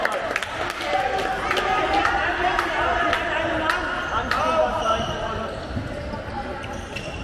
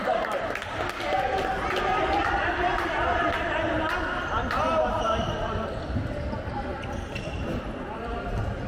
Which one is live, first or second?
first